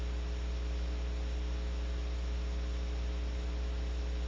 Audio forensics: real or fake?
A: real